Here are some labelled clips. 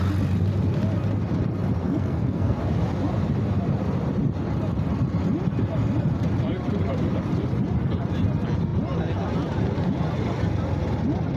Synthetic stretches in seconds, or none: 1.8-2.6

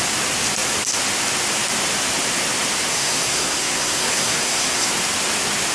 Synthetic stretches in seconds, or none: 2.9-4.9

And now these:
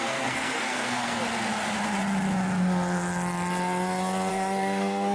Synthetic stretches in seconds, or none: 0.0-1.2; 4.3-5.1